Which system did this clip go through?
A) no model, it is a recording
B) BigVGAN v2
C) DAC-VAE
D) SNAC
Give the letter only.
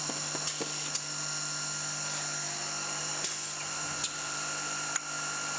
A